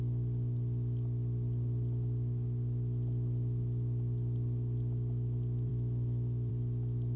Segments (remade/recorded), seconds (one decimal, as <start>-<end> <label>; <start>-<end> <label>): 0.0-5.7 recorded; 5.7-6.5 remade; 6.5-7.2 recorded

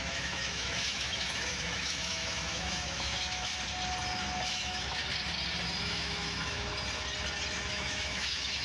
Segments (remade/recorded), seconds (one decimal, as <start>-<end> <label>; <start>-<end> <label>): 0.0-3.5 remade; 3.5-4.5 recorded; 4.5-5.0 remade; 5.0-5.8 recorded; 5.8-6.7 remade; 6.7-7.7 recorded; 7.7-8.6 remade

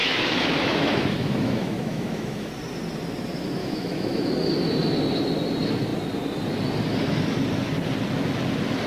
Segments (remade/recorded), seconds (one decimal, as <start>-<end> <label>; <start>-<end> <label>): 0.0-2.5 remade; 2.5-3.6 recorded; 3.6-4.3 remade; 4.3-8.9 recorded

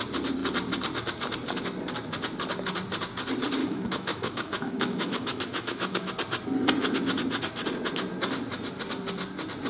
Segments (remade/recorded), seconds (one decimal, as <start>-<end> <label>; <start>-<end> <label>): 0.0-3.6 recorded; 3.6-6.1 remade; 6.1-9.7 recorded

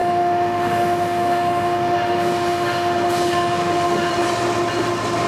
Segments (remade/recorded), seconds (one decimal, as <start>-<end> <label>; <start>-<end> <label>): 0.0-4.1 remade; 4.1-5.3 recorded

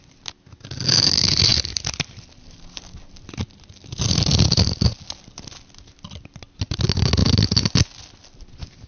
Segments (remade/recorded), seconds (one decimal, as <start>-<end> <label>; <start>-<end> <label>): 0.0-8.9 recorded

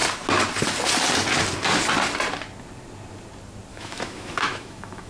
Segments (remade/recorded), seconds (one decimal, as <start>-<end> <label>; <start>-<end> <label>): 0.0-3.7 recorded; 3.7-5.1 remade

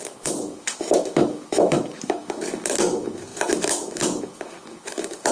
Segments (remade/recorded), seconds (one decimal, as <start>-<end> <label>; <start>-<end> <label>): 0.0-5.3 remade